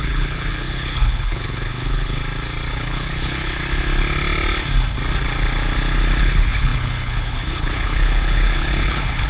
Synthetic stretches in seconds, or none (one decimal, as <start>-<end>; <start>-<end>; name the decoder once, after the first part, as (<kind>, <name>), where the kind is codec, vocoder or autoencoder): 0.0-2.2 (codec, HILCodec); 2.7-3.6; 6.2-9.3